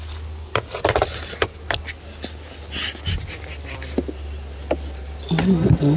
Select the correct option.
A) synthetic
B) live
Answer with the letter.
B